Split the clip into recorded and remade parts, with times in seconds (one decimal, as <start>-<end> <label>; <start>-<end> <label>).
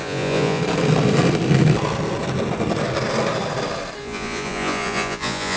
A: 0.0-0.6 remade; 0.6-4.0 recorded; 4.0-5.6 remade